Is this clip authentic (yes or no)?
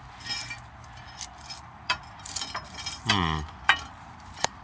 no